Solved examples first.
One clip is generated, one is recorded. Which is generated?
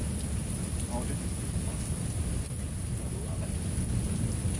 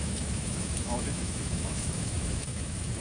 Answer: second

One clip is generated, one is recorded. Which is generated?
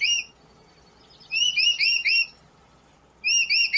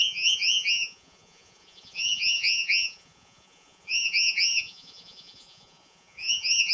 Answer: second